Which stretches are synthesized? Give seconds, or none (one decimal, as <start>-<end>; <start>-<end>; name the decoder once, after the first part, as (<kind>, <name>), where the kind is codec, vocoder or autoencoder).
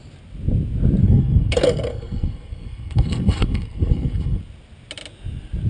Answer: 1.0-4.4 (codec, SNAC)